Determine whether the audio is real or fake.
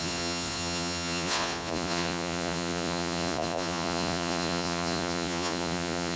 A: fake